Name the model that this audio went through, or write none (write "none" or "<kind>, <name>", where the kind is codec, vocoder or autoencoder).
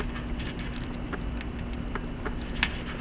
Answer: none